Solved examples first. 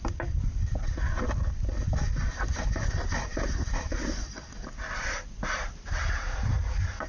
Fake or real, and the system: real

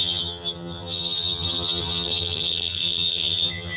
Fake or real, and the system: fake, vocoder, HiFi-GAN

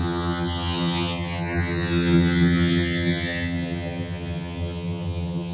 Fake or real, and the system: fake, vocoder, HiFi-GAN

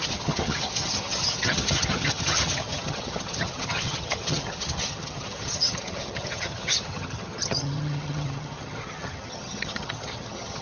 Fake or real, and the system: fake, vocoder, HiFi-GAN